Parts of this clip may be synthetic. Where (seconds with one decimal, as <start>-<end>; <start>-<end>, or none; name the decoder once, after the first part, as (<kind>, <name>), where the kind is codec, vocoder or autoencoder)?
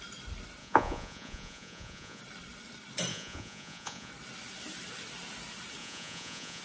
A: 0.6-2.2 (vocoder, Vocos); 3.1-4.1; 5.8-6.6